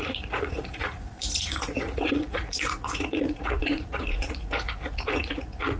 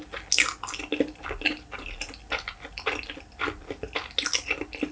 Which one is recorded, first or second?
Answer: second